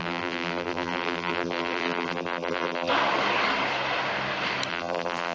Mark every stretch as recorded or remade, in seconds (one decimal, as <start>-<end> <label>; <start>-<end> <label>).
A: 0.0-2.9 remade; 2.9-4.7 recorded; 4.7-5.3 remade